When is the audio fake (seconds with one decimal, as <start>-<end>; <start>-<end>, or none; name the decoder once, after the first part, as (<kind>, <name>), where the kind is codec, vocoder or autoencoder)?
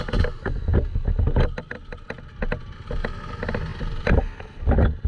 none